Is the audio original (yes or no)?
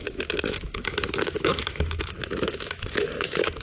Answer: no